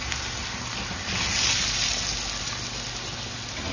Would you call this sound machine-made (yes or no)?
no